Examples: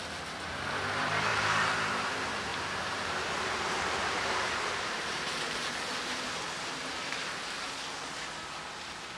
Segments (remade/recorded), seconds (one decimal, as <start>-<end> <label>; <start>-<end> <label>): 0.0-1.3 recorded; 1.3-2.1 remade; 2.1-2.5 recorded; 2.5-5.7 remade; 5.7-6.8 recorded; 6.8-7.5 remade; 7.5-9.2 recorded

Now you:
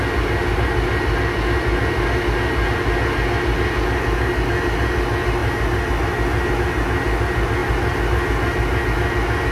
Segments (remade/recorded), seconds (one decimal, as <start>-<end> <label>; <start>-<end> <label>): 0.0-9.5 recorded

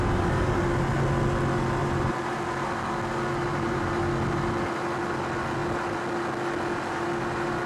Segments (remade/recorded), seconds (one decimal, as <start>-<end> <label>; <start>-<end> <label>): 0.0-1.8 recorded; 1.8-2.3 remade; 2.3-3.5 recorded; 3.5-4.0 remade; 4.0-7.7 recorded